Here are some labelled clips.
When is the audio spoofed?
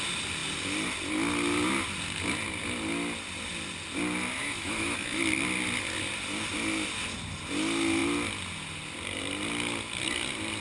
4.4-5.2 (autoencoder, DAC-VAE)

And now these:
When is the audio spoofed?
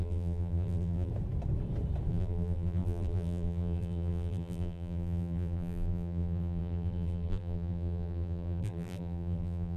0.0-1.1 (vocoder, BigVGAN v2); 2.1-9.8